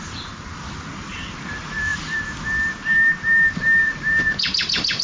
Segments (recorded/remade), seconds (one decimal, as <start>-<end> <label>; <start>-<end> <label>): 0.0-5.0 recorded